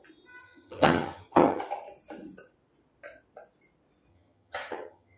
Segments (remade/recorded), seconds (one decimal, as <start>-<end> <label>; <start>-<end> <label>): 0.0-0.4 recorded; 0.4-1.6 remade; 1.6-4.1 recorded; 4.1-5.2 remade